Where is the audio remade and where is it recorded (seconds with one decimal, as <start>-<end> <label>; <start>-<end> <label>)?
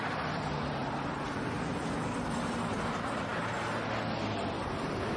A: 0.0-5.2 recorded